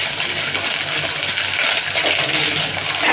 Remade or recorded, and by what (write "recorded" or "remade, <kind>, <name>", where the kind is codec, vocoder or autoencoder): recorded